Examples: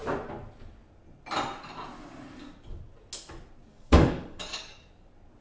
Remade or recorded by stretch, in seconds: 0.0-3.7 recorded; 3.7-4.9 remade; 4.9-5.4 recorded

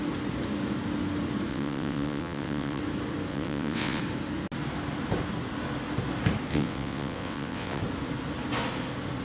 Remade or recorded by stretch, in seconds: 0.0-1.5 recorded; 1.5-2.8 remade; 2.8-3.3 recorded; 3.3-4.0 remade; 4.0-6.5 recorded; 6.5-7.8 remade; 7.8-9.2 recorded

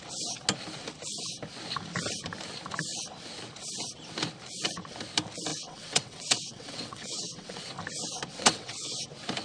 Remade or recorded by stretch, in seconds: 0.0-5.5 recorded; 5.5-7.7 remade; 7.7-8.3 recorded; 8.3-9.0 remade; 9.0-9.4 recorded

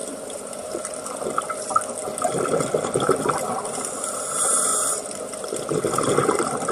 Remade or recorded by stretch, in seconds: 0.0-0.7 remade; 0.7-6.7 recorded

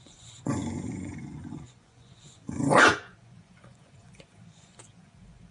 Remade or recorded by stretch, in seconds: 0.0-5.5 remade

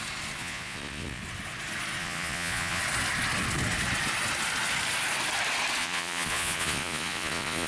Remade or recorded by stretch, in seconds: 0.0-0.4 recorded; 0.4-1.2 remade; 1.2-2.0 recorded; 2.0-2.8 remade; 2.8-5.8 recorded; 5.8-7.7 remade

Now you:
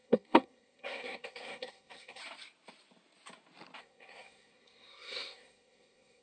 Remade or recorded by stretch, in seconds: 0.0-2.2 remade; 2.2-3.8 recorded; 3.8-6.2 remade